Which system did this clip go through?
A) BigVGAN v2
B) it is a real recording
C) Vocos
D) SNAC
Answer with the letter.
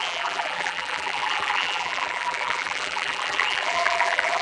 A